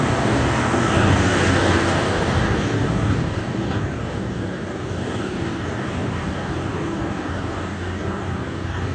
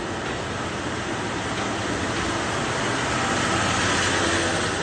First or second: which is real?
second